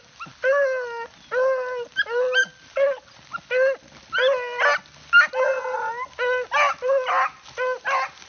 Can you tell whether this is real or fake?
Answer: real